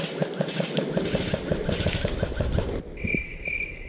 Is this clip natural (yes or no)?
yes